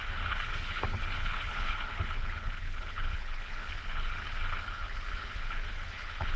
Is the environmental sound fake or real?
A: fake